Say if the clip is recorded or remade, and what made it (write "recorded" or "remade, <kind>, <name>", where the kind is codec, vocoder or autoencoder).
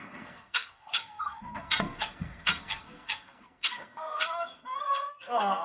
remade, codec, SNAC